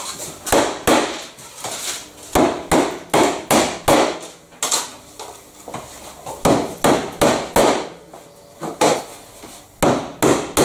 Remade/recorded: recorded